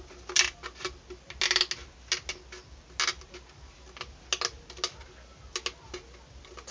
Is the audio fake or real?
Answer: real